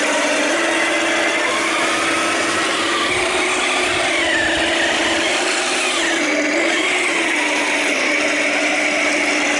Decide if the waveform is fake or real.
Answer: real